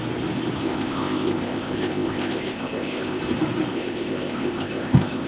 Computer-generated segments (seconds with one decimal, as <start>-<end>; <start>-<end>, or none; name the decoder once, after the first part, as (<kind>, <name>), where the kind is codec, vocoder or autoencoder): 0.6-3.2 (codec, ZipCodec); 3.7-5.3